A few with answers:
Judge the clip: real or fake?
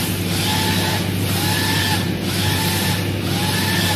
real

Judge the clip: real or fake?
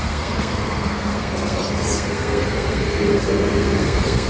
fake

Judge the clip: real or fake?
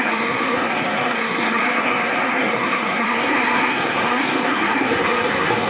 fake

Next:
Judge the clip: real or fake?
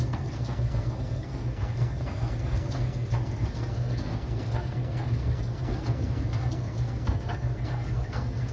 fake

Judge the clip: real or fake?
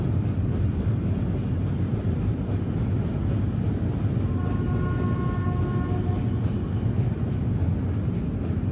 real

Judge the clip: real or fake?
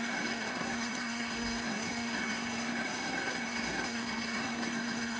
fake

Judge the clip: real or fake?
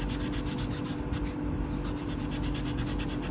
real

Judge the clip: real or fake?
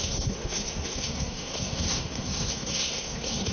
fake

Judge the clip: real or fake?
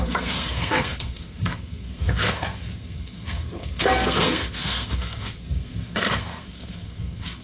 fake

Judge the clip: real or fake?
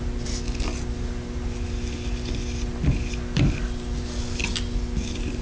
real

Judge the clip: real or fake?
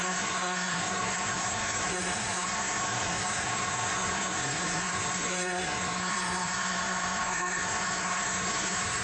fake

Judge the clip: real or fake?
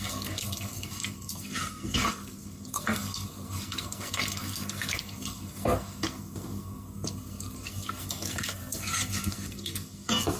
fake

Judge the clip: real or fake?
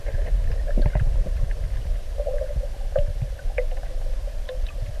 real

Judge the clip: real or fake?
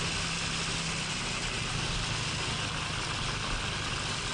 real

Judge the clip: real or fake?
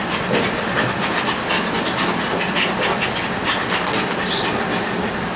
real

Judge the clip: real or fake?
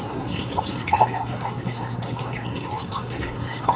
fake